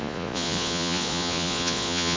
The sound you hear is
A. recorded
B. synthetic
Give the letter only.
B